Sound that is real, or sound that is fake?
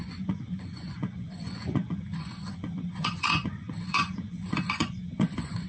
fake